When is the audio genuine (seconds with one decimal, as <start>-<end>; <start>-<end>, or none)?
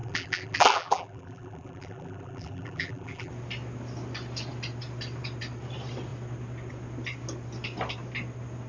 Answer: 3.3-8.7